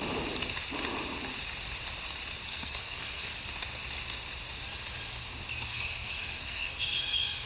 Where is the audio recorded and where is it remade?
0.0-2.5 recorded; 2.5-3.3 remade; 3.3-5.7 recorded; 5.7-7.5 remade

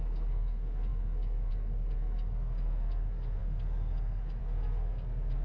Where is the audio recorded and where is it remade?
0.0-5.4 remade

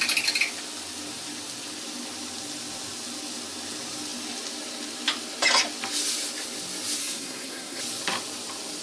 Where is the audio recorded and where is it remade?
0.0-7.0 recorded; 7.0-7.8 remade; 7.8-8.8 recorded

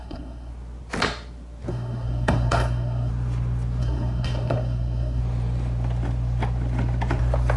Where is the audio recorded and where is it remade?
0.0-0.5 remade; 0.5-1.7 recorded; 1.7-3.1 remade; 3.1-3.8 recorded; 3.8-5.2 remade; 5.2-7.6 recorded